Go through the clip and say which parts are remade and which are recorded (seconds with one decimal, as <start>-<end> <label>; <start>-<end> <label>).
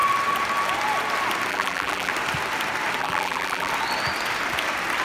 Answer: 0.0-1.5 recorded; 1.5-2.1 remade; 2.1-3.0 recorded; 3.0-3.7 remade; 3.7-5.0 recorded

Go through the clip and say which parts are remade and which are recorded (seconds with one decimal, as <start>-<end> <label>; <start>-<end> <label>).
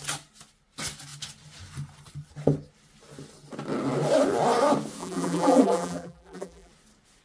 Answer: 0.0-5.0 recorded; 5.0-6.7 remade; 6.7-7.2 recorded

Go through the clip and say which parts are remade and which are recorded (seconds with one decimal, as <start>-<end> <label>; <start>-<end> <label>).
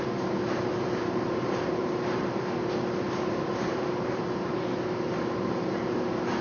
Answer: 0.0-0.8 recorded; 0.8-2.3 remade; 2.3-3.7 recorded; 3.7-4.6 remade; 4.6-5.1 recorded; 5.1-6.0 remade; 6.0-6.4 recorded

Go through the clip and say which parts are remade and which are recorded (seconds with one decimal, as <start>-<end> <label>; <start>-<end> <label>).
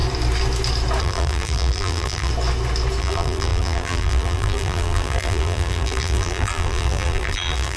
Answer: 0.0-1.0 recorded; 1.0-2.3 remade; 2.3-3.0 recorded; 3.0-7.8 remade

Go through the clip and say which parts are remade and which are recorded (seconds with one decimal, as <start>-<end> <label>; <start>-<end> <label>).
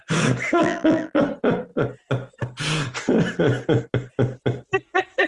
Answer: 0.0-0.6 recorded; 0.6-1.2 remade; 1.2-5.3 recorded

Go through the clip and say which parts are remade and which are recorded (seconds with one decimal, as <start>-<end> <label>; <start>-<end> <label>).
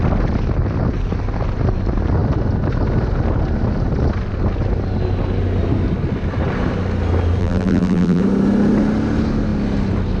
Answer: 0.0-7.4 recorded; 7.4-8.2 remade; 8.2-10.2 recorded